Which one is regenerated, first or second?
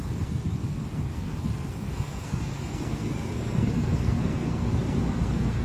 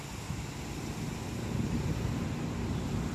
first